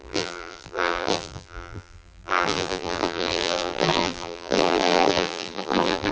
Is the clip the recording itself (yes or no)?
no